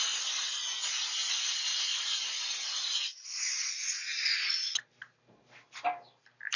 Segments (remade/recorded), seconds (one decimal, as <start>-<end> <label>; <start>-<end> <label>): 0.0-6.6 recorded